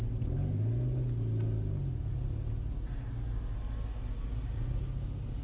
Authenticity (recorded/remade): recorded